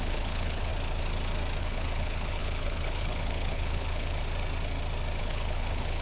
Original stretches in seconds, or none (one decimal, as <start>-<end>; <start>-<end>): 0.7-1.6; 4.2-5.2